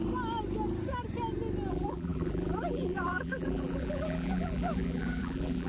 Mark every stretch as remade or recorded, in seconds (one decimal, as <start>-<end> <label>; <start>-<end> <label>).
0.0-1.7 recorded; 1.7-5.7 remade

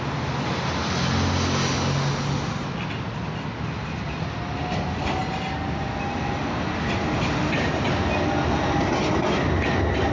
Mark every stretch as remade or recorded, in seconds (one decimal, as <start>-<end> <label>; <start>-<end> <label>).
0.0-10.1 recorded

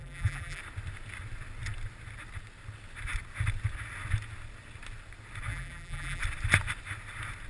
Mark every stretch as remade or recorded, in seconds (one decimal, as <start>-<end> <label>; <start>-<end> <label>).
0.0-0.6 remade; 0.6-5.5 recorded; 5.5-6.2 remade; 6.2-7.5 recorded

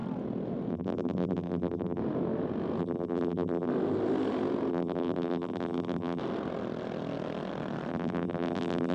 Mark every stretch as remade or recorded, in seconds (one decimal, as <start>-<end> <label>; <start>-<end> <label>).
0.0-0.7 recorded; 0.7-2.0 remade; 2.0-2.8 recorded; 2.8-3.7 remade; 3.7-4.7 recorded; 4.7-6.2 remade; 6.2-7.9 recorded; 7.9-8.9 remade

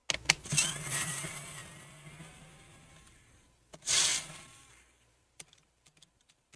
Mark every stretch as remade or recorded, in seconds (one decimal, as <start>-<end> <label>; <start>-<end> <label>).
0.0-0.7 recorded; 0.7-1.6 remade; 1.6-2.9 recorded; 2.9-4.1 remade; 4.1-4.7 recorded; 4.7-6.6 remade